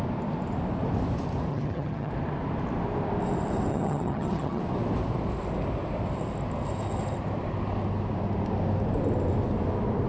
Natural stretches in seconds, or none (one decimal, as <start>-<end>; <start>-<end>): 0.0-1.5; 2.1-3.7; 4.6-10.1

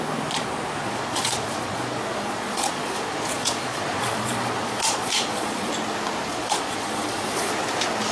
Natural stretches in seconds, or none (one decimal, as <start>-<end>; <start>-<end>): 0.0-0.8; 5.7-6.3; 7.5-8.1

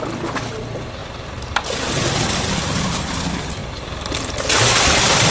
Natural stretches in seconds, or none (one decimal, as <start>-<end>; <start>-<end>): 0.0-5.3

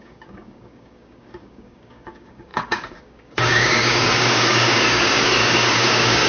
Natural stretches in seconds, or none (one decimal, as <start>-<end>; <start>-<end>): none

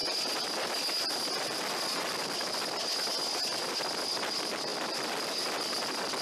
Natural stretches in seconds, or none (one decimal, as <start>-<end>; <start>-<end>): 0.0-6.2

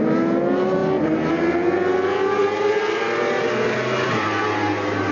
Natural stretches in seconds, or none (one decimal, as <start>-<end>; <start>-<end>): 0.0-5.1